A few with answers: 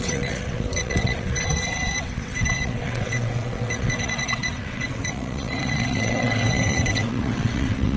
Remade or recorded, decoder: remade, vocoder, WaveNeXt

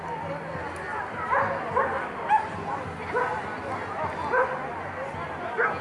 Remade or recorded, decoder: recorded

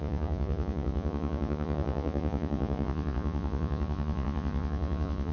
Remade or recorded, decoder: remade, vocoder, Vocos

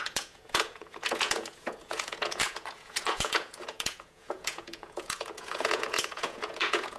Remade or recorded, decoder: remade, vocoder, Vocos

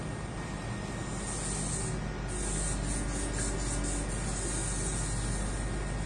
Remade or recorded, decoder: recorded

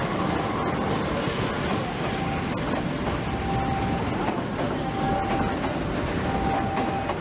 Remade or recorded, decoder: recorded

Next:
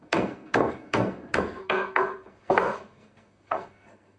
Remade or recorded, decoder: remade, codec, SNAC